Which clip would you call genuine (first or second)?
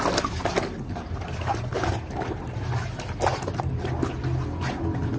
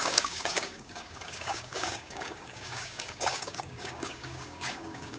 first